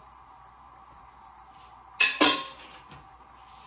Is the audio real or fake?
real